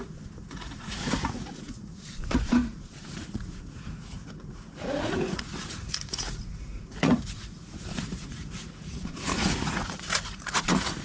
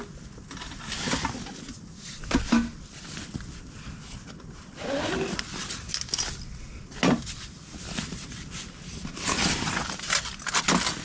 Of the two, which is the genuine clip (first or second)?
second